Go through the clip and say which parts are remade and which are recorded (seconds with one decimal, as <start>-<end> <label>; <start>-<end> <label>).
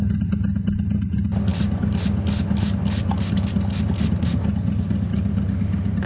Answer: 0.0-6.1 recorded